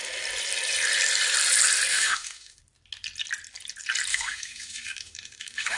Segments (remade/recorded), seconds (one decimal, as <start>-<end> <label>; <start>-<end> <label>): 0.0-1.9 recorded; 1.9-2.6 remade; 2.6-4.1 recorded; 4.1-5.8 remade